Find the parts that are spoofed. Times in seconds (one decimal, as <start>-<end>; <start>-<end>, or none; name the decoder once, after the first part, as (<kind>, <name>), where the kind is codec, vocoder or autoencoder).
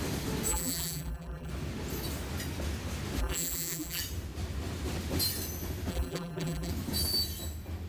0.5-1.5 (vocoder, BigVGAN v2); 3.2-4.0; 5.9-6.7